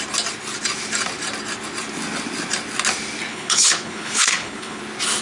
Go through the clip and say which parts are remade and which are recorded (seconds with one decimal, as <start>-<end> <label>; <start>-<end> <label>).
0.0-3.3 recorded; 3.3-4.8 remade; 4.8-5.2 recorded